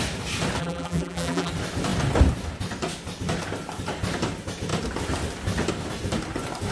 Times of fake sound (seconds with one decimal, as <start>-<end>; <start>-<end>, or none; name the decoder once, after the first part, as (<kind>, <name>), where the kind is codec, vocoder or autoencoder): 0.6-1.5 (vocoder, BigVGAN v2)